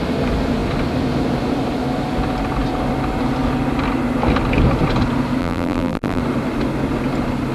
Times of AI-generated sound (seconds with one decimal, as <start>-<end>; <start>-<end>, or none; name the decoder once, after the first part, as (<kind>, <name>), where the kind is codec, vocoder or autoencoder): 5.4-6.2 (vocoder, BigVGAN v2)